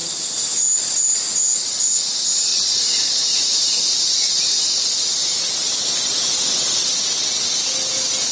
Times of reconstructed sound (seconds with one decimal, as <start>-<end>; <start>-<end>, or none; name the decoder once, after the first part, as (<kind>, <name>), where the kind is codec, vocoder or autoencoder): 2.5-6.8 (vocoder, BigVGAN v2)